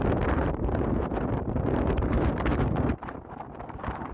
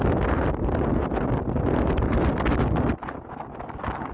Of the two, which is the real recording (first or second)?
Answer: second